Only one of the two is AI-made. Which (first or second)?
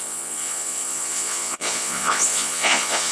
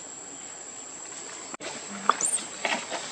first